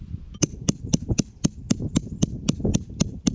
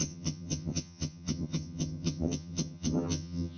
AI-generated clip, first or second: second